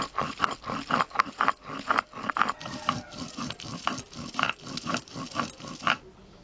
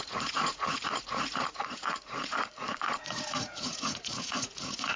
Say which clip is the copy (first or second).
second